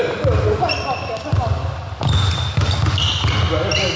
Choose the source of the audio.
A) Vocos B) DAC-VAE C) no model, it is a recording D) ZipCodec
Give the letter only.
C